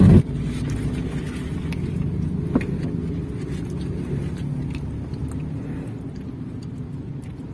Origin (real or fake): real